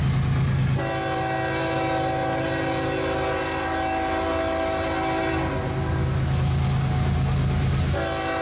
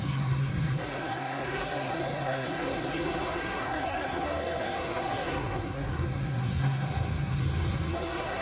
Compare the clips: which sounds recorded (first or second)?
first